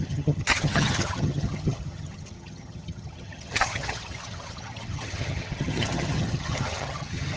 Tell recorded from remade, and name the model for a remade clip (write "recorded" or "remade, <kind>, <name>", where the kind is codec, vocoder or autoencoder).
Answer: remade, vocoder, HiFi-GAN